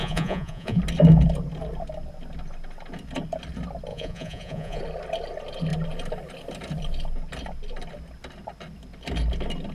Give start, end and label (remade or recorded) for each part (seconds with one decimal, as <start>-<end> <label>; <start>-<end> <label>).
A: 0.0-0.8 remade; 0.8-3.9 recorded; 3.9-4.8 remade; 4.8-9.7 recorded